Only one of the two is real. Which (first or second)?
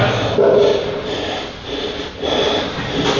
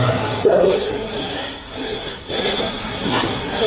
first